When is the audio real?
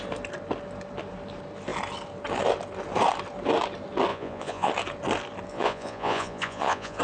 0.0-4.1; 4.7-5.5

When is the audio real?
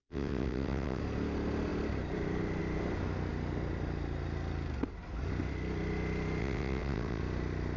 1.0-6.4; 7.2-7.8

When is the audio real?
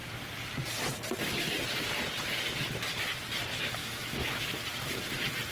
0.0-3.8; 4.4-5.5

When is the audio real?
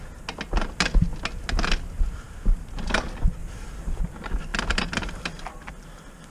0.0-3.4; 4.0-4.5; 5.7-6.3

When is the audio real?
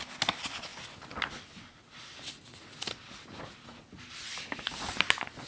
0.0-5.5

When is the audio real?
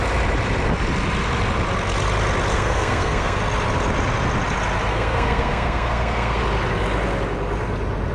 0.0-2.5; 3.4-4.9; 6.4-8.1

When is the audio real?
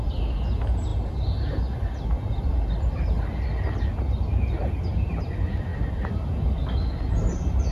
0.0-7.7